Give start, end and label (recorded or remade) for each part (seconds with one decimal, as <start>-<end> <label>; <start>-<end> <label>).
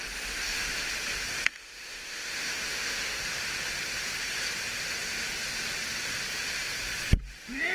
0.0-1.4 recorded; 1.4-3.2 remade; 3.2-7.7 recorded